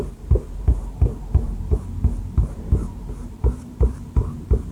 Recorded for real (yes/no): no